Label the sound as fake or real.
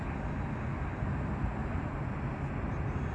real